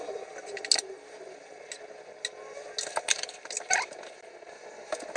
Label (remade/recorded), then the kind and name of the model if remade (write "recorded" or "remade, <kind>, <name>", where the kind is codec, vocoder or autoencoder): recorded